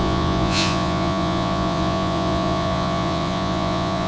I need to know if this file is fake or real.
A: fake